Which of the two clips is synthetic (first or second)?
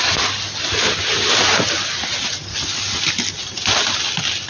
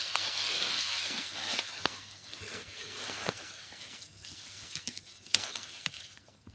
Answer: second